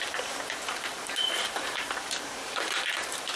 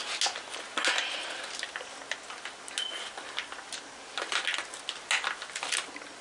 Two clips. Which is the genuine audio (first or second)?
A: second